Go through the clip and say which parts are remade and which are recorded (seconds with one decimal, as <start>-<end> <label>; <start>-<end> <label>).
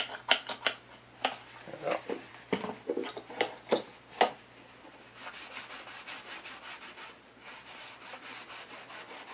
0.0-2.3 recorded; 2.3-5.0 remade; 5.0-9.3 recorded